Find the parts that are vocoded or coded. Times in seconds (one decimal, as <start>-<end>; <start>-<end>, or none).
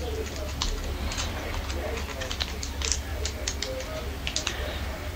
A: 0.0-3.1; 4.0-5.2